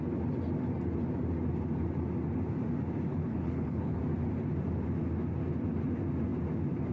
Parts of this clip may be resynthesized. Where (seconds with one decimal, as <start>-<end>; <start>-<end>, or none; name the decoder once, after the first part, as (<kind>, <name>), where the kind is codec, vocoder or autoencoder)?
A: 3.1-4.0 (codec, HILCodec)